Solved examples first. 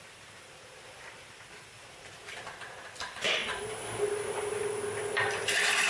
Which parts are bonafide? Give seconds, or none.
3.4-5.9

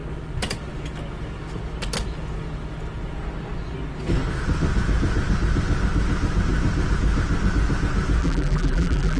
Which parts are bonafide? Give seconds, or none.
0.0-8.2

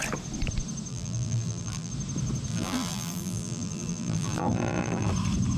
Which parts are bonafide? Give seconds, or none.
0.0-0.9; 1.9-2.5; 5.1-5.6

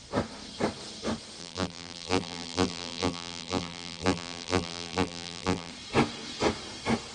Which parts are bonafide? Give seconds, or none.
0.0-1.4; 5.7-7.1

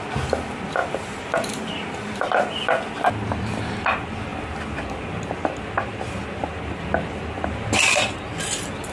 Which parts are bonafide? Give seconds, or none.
0.0-0.8; 2.5-8.9

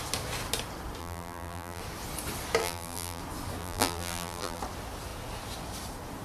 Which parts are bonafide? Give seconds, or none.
0.0-1.0; 1.8-2.6; 3.2-3.6; 4.6-6.2